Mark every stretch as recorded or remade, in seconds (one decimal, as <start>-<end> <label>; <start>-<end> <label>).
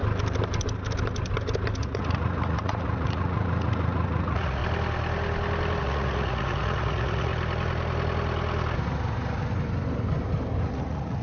0.0-1.8 recorded; 1.8-4.6 remade; 4.6-5.8 recorded; 5.8-7.3 remade; 7.3-10.6 recorded; 10.6-11.2 remade